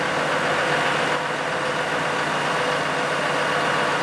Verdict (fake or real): real